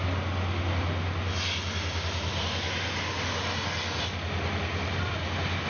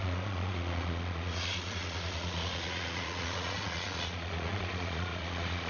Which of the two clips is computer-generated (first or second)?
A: second